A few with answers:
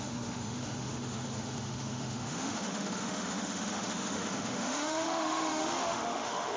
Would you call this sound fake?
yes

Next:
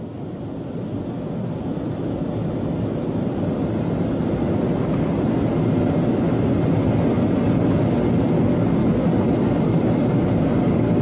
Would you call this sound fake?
no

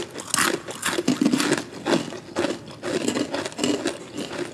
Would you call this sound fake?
no